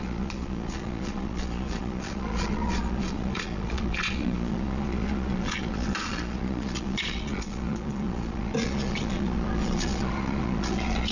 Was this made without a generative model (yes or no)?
no